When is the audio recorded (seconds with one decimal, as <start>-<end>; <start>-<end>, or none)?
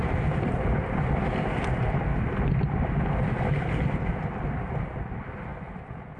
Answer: 0.0-6.2